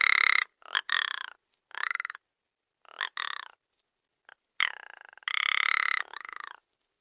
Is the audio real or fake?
real